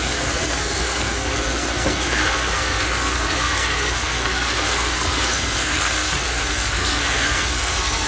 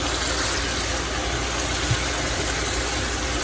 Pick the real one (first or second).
second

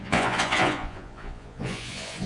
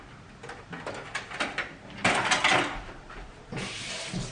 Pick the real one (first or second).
second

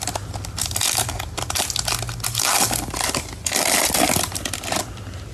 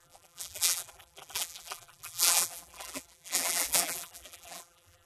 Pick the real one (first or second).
first